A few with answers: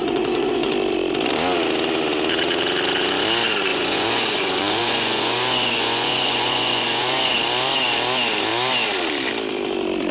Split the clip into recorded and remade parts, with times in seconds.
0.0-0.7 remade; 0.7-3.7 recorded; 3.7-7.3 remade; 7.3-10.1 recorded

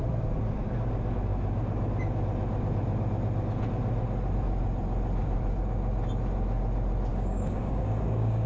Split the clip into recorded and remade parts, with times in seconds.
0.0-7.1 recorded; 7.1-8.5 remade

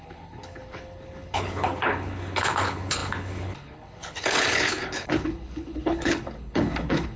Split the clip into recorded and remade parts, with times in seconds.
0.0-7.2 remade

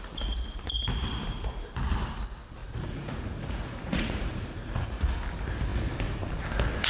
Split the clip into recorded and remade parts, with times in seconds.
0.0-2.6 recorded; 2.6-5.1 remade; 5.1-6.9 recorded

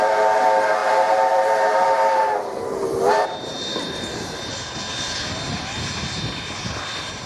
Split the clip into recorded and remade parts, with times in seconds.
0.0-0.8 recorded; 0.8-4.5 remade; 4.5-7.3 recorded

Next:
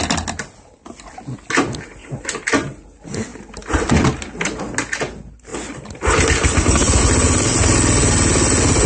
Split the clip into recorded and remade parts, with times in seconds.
0.0-2.0 recorded; 2.0-2.8 remade; 2.8-5.5 recorded; 5.5-7.0 remade; 7.0-8.9 recorded

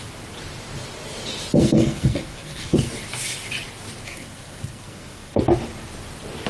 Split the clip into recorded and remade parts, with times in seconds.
0.0-1.6 recorded; 1.6-2.9 remade; 2.9-4.0 recorded; 4.0-5.4 remade; 5.4-6.5 recorded

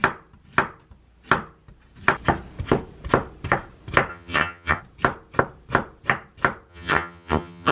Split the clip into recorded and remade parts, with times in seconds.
0.0-4.1 recorded; 4.1-4.8 remade; 4.8-6.7 recorded; 6.7-7.7 remade